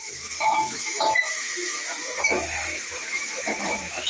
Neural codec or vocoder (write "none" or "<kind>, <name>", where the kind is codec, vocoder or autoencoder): autoencoder, DAC-VAE